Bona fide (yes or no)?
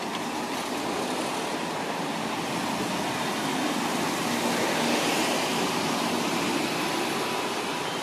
yes